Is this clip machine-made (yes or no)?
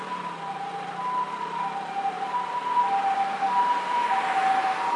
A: no